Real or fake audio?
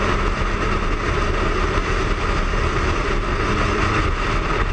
real